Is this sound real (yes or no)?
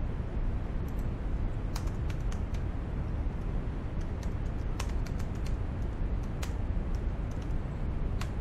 yes